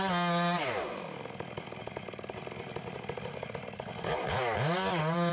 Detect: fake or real real